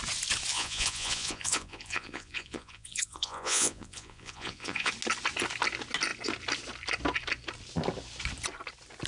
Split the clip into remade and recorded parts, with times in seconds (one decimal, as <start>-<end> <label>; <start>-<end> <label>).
0.0-0.5 recorded; 0.5-4.9 remade; 4.9-9.1 recorded